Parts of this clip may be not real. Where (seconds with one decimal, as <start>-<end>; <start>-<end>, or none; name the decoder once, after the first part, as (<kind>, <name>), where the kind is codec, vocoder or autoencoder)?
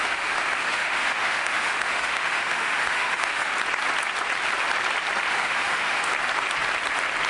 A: 0.0-3.5 (autoencoder, DAC-VAE); 5.3-6.1